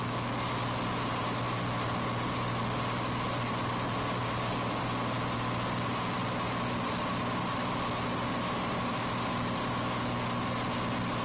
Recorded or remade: recorded